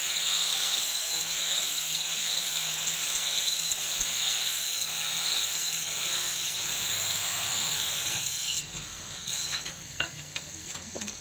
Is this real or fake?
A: fake